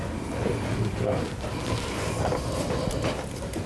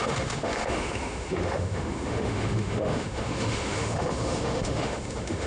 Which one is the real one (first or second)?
first